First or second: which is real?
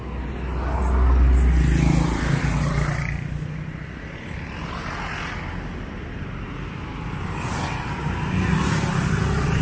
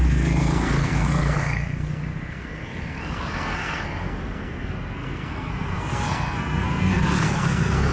first